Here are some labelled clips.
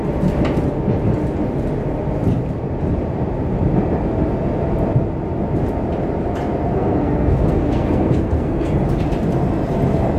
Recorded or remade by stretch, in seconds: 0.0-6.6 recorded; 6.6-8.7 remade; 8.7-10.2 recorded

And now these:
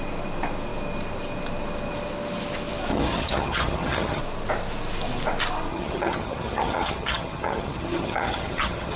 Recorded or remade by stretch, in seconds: 0.0-2.9 recorded; 2.9-4.2 remade; 4.2-5.7 recorded; 5.7-9.0 remade

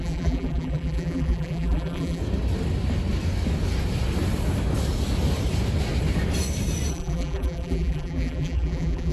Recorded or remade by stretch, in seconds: 0.0-2.2 remade; 2.2-6.9 recorded; 6.9-9.1 remade